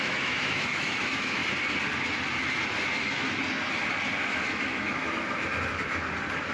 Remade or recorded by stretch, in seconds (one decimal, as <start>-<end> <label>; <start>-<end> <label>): 0.0-1.4 remade; 1.4-4.2 recorded; 4.2-5.0 remade; 5.0-6.5 recorded